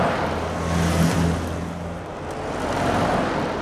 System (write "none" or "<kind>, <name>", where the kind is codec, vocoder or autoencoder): none